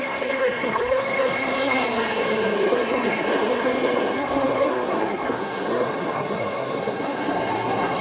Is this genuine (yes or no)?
no